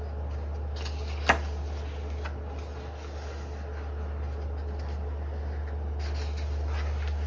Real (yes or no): yes